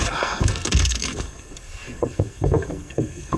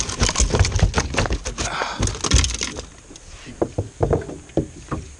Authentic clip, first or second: second